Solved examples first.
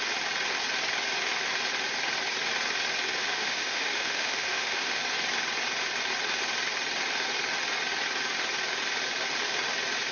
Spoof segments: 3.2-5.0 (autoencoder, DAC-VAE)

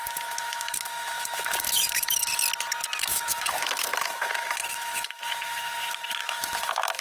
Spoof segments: 0.0-2.3 (autoencoder, DAC-VAE); 3.0-7.0

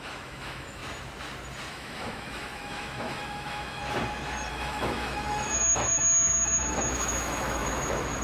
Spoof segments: 0.0-0.8 (autoencoder, DAC-VAE); 1.7-3.8; 4.5-8.2

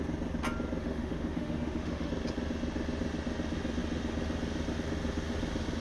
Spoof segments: 0.8-2.1 (autoencoder, DAC-VAE)